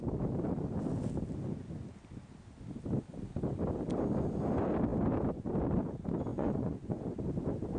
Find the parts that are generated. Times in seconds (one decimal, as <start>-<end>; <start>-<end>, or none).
6.3-7.2